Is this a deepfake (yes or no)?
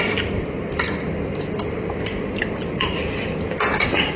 no